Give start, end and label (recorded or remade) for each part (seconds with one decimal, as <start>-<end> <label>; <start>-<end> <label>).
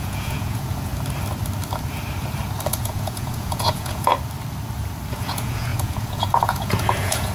0.0-0.9 remade; 0.9-2.7 recorded; 2.7-4.1 remade; 4.1-5.1 recorded; 5.1-7.3 remade